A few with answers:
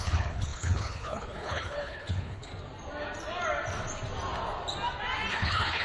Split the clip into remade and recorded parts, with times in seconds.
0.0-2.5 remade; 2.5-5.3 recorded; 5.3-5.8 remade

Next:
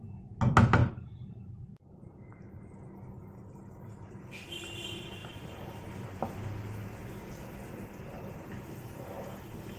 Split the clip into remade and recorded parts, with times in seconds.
0.0-0.8 recorded; 0.8-2.6 remade; 2.6-5.2 recorded; 5.2-5.9 remade; 5.9-9.8 recorded

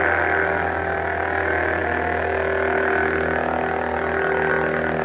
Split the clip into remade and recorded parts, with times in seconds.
0.0-5.0 recorded

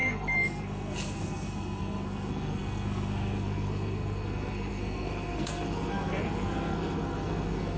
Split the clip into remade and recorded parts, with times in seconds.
0.0-7.8 remade

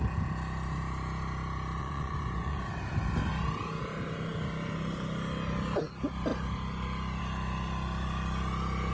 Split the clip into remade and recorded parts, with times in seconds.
0.0-1.8 recorded; 1.8-2.7 remade; 2.7-8.9 recorded